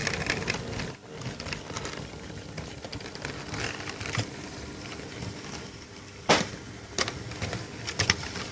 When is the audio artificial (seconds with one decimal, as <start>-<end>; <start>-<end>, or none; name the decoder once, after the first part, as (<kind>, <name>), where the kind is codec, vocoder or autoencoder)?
1.4-8.5 (vocoder, BigVGAN v2)

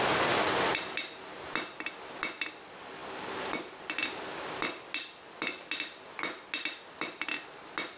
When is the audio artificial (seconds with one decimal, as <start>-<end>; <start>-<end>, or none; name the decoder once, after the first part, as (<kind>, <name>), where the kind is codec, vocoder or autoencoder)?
none

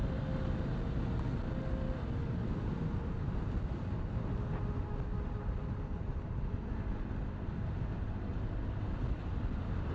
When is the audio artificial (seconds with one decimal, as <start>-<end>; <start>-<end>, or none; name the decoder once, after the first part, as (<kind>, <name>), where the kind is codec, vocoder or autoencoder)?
none

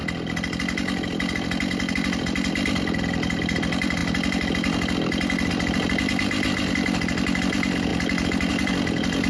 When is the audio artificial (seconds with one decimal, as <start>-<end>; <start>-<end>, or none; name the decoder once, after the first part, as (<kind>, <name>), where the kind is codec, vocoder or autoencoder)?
1.9-7.9 (vocoder, BigVGAN v2); 8.5-9.3

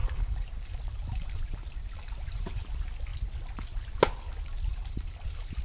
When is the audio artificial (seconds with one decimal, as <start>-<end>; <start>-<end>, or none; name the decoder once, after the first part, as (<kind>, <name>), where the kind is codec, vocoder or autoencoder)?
0.0-2.6 (vocoder, BigVGAN v2); 4.7-5.6

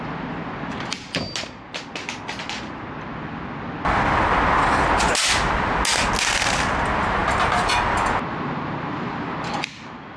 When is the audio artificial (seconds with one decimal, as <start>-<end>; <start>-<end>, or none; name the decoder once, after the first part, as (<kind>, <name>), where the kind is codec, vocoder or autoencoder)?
none

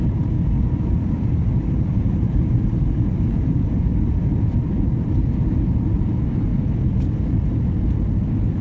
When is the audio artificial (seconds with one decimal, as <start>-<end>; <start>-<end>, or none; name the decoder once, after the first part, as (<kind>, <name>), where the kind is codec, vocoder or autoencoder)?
0.0-3.9 (vocoder, BigVGAN v2); 4.6-6.5

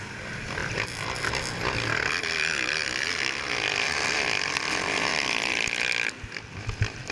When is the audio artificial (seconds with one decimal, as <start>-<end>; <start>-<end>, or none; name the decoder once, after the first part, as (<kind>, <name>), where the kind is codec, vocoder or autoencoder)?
none